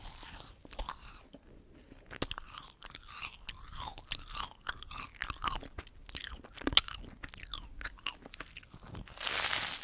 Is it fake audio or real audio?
real